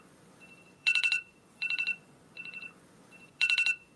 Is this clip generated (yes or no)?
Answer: yes